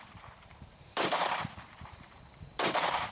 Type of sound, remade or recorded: remade